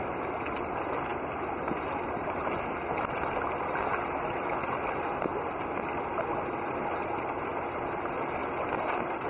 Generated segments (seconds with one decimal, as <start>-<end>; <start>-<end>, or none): none